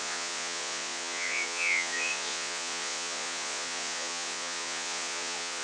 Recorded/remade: remade